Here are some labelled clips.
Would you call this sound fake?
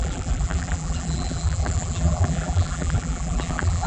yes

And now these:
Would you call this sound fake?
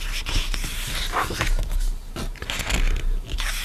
no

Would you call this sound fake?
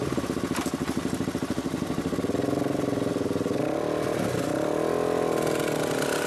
no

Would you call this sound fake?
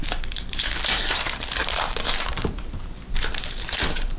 yes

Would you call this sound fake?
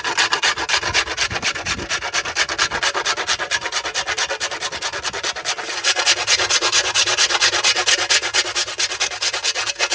no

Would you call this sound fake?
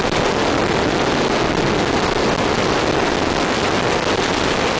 no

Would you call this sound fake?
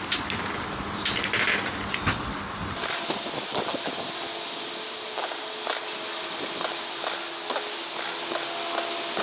no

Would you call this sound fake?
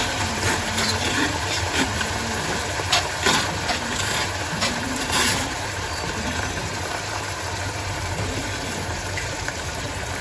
yes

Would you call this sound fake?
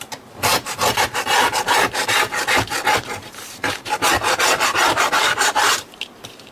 yes